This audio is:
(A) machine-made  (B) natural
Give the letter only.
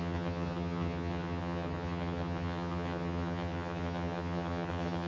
A